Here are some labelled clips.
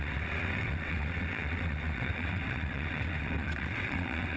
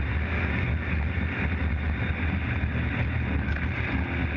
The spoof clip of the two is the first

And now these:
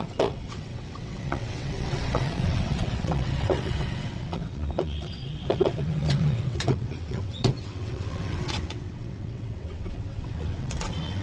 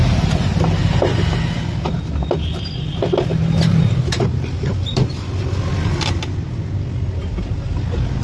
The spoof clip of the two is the first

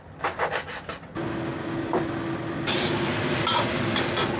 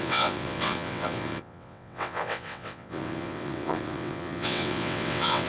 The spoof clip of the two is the second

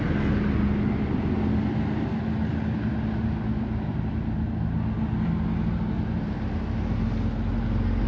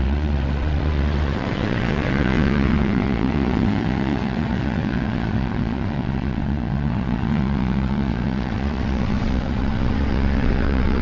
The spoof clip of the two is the second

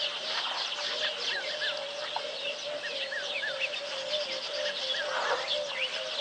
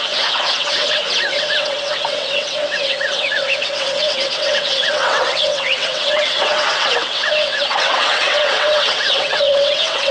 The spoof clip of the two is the second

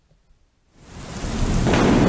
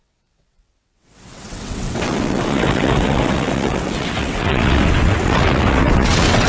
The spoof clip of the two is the second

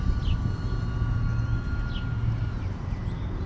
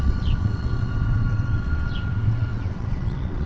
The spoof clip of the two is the second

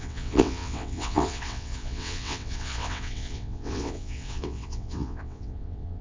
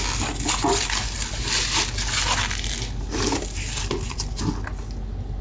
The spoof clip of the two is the first